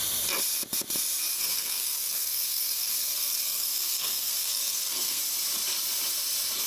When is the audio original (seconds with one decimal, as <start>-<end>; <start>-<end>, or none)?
0.0-1.2; 5.2-6.7